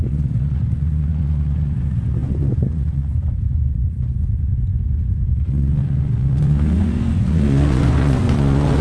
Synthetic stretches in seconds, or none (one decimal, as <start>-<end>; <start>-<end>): 0.0-8.8